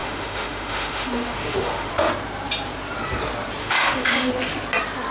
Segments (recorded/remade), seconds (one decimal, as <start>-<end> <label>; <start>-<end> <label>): 0.0-1.9 remade; 1.9-3.6 recorded; 3.6-4.3 remade; 4.3-5.1 recorded